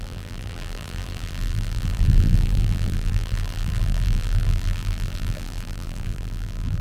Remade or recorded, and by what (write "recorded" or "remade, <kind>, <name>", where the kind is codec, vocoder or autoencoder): remade, vocoder, BigVGAN v2